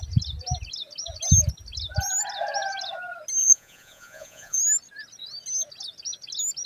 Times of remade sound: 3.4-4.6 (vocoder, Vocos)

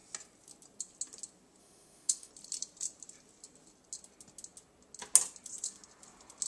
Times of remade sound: 1.6-2.3 (autoencoder, DAC-VAE)

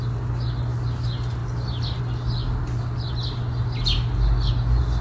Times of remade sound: none

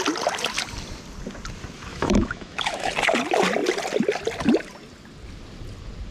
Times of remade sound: 1.9-2.9 (autoencoder, DAC-VAE)

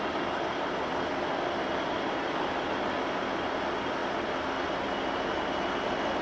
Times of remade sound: none

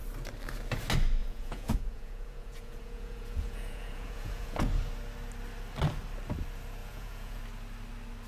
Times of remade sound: 1.2-4.7 (vocoder, Vocos); 6.8-7.4